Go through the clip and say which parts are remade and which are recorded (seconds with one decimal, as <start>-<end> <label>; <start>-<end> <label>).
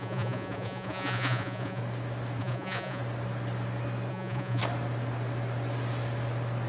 0.0-1.8 remade; 1.8-2.4 recorded; 2.4-3.0 remade; 3.0-4.1 recorded; 4.1-4.6 remade; 4.6-6.7 recorded